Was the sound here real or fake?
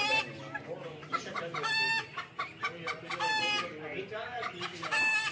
real